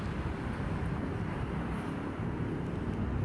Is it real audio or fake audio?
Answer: real